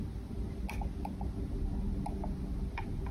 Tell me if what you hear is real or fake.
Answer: real